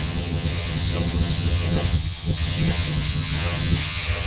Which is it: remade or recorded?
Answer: remade